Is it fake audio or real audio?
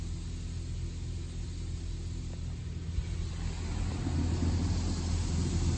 real